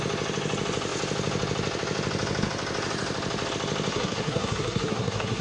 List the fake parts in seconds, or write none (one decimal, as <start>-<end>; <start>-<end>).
3.9-5.4